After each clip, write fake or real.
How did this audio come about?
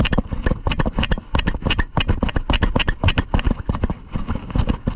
real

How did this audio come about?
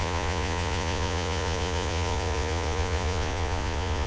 fake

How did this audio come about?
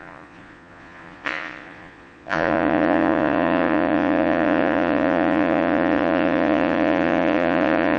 fake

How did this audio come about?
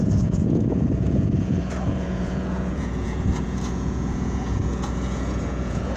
fake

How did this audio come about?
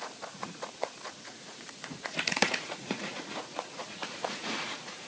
fake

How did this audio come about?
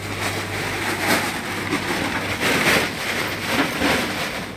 real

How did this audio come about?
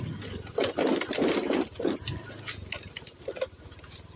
real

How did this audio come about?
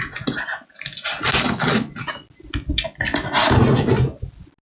real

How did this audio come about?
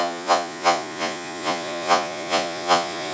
fake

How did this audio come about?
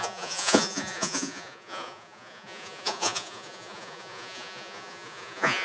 fake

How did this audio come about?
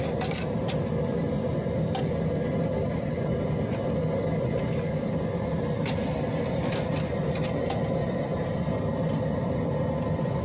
real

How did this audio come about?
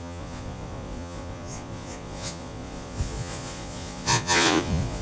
fake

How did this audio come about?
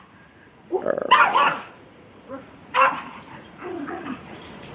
fake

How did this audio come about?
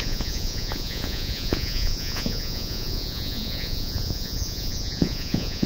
fake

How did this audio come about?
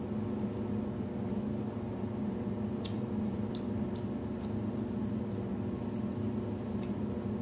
real